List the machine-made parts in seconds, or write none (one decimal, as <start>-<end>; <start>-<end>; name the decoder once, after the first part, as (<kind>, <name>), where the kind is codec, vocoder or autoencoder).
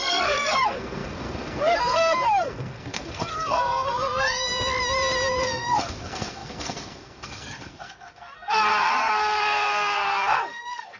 0.0-4.5 (codec, SNAC); 5.4-11.0